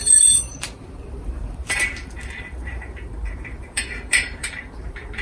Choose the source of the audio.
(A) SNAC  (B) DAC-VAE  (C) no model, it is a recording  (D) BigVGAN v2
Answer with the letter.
D